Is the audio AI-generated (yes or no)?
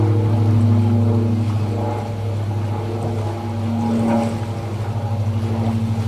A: no